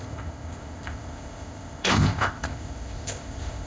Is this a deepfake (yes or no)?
yes